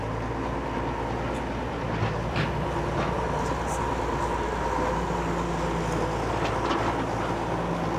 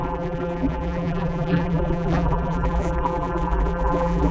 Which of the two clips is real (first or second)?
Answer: first